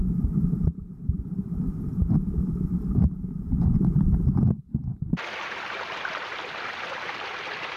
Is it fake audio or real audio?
fake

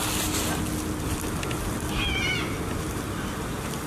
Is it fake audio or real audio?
real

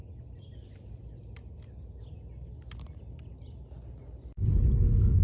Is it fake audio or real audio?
real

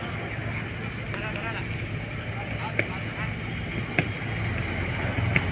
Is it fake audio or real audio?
real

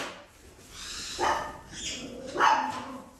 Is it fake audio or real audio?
real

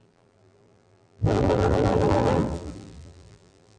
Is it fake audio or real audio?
fake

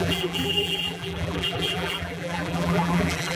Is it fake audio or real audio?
fake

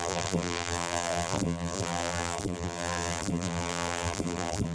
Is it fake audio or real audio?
fake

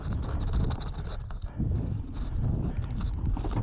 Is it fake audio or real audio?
real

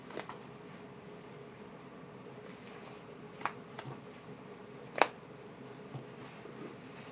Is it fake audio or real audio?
real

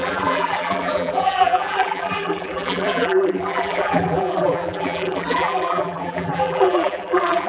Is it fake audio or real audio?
fake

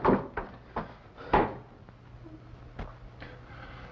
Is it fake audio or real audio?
real